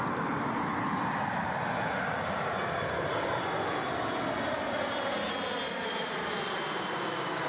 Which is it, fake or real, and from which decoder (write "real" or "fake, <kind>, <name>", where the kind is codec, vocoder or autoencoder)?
real